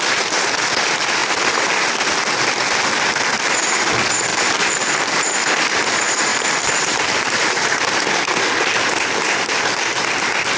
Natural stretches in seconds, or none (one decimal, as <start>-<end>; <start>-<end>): 0.0-1.2; 1.8-4.3; 4.9-6.3; 7.8-10.6